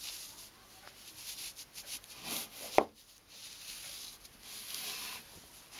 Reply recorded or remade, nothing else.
recorded